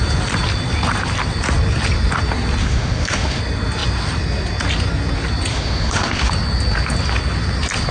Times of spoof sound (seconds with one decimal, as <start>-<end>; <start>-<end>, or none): 2.6-3.4; 5.5-6.3

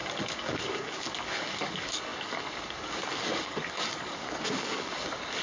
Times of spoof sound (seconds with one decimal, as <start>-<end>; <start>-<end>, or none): 0.0-5.4

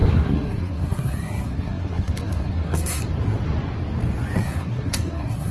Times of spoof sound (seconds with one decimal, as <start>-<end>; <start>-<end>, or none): 0.0-3.0; 4.4-5.5

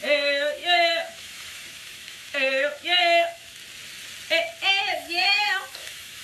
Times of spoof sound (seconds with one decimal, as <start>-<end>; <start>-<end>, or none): 0.0-3.6; 4.7-6.2